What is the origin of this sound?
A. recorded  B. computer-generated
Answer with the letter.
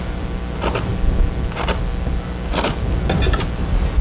A